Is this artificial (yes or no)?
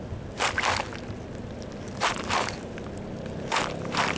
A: no